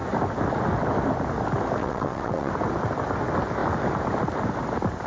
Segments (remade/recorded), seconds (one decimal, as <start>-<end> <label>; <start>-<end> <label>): 0.0-1.8 recorded; 1.8-2.5 remade; 2.5-5.1 recorded